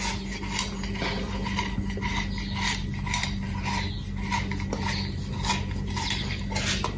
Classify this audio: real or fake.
real